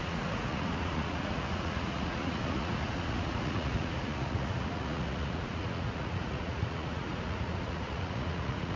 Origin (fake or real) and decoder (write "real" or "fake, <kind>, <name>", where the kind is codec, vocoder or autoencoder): fake, vocoder, Vocos